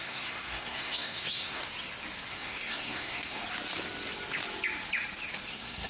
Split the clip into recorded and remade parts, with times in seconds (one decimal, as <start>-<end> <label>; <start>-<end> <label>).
0.0-1.6 remade; 1.6-2.3 recorded; 2.3-3.4 remade; 3.4-5.5 recorded; 5.5-5.9 remade